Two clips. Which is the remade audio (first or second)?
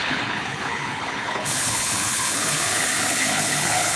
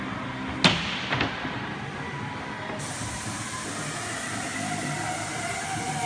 first